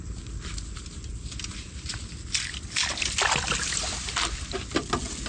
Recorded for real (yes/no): yes